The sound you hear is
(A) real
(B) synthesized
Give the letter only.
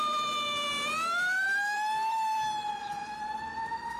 B